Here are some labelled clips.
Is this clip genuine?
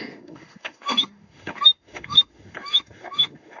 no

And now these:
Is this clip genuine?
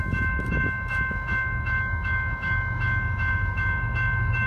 no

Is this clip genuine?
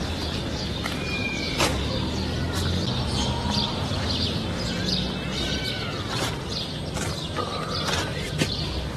yes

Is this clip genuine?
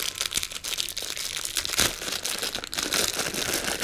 yes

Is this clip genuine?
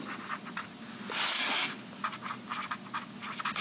yes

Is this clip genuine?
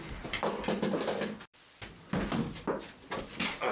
yes